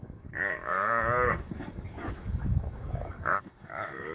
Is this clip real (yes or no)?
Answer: no